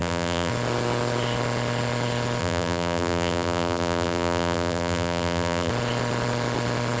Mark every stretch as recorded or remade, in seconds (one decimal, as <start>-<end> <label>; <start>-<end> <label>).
0.0-0.5 remade; 0.5-2.4 recorded; 2.4-5.7 remade; 5.7-7.0 recorded